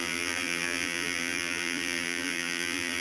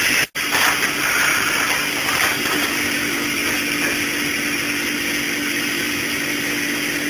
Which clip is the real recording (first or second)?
second